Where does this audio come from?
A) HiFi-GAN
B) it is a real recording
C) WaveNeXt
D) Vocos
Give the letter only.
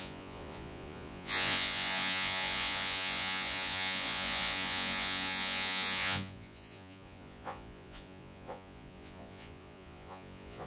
D